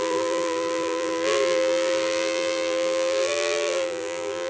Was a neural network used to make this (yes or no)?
yes